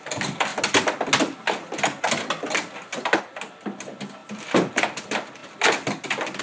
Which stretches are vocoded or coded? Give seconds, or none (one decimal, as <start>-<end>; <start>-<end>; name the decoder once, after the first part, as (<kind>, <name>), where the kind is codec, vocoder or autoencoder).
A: none